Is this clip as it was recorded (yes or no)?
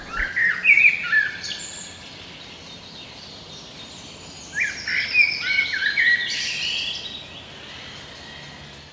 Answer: yes